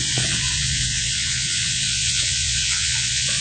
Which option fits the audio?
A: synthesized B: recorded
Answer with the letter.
A